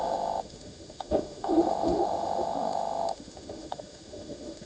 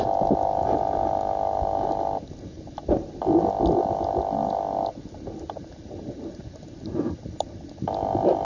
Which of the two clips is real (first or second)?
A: second